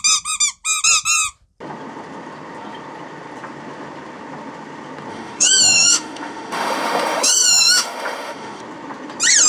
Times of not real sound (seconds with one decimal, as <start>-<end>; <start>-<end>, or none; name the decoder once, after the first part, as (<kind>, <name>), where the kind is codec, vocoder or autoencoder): 5.1-8.6 (autoencoder, DAC-VAE)